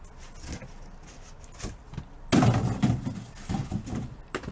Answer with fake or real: real